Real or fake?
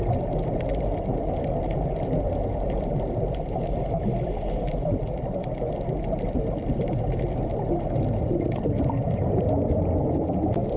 real